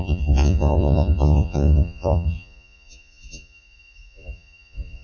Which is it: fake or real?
fake